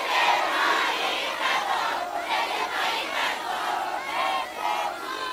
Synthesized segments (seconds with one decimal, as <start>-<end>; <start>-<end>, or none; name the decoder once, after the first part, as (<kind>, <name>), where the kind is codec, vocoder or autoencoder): none